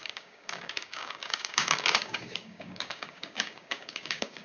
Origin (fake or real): fake